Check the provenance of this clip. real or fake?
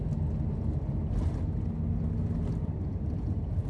real